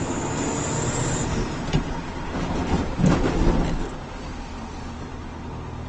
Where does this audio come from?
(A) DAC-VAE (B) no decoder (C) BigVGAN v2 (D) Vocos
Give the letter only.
B